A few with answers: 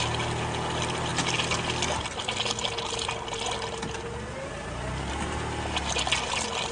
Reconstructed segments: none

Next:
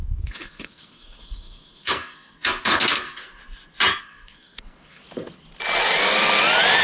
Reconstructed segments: 0.0-3.4; 4.0-5.0

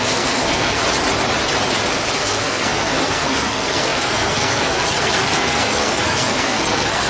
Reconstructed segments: 0.0-0.8; 2.1-7.1